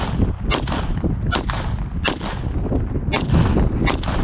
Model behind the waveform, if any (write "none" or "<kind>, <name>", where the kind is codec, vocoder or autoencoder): none